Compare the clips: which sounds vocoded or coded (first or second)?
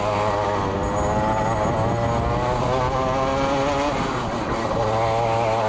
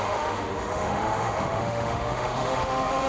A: second